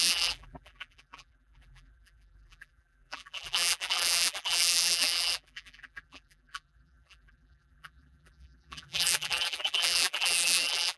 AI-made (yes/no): yes